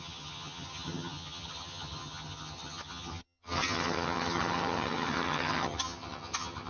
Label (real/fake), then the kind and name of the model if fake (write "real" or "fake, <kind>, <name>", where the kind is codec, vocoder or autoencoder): fake, vocoder, HiFi-GAN